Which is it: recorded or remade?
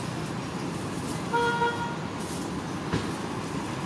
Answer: recorded